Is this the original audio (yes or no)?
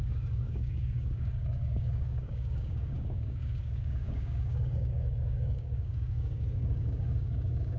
no